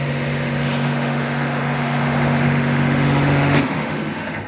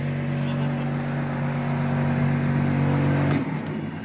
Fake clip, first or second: first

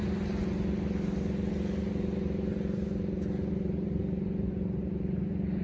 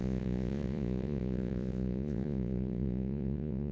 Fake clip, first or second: second